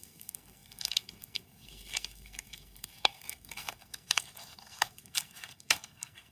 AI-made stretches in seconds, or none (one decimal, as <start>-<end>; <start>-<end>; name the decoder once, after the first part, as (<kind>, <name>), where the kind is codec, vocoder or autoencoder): 0.0-6.3 (codec, SNAC)